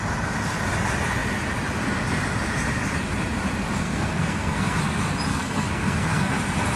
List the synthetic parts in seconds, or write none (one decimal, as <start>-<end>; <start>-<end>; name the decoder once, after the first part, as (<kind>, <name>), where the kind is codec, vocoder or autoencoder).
3.8-4.8 (codec, SNAC); 5.3-6.3